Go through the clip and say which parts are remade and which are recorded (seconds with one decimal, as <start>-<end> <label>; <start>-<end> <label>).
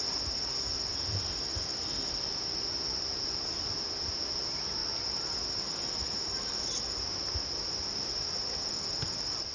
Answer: 0.0-9.5 recorded